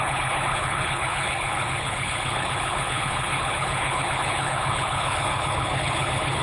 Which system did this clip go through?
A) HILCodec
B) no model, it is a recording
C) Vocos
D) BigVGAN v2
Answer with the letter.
A